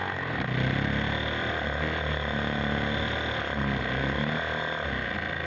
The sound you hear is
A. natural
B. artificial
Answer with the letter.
A